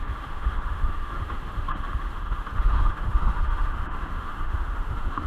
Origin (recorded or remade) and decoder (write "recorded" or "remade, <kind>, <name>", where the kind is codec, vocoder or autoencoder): remade, autoencoder, DAC-VAE